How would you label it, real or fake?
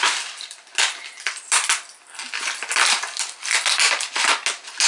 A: real